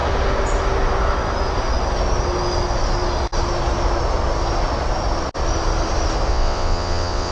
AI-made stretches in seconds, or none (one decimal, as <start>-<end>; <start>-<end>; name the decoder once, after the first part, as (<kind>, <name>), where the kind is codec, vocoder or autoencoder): 6.3-7.3 (vocoder, WaveNeXt)